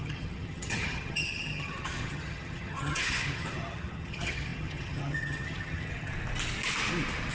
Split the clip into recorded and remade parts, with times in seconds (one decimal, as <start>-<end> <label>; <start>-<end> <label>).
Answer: 0.0-6.1 remade; 6.1-7.3 recorded